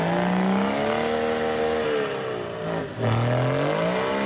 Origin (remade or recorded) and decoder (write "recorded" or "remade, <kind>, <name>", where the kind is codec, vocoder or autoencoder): recorded